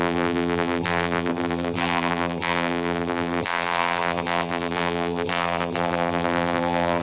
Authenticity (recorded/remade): remade